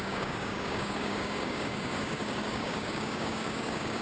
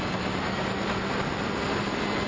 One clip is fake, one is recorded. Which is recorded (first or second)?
second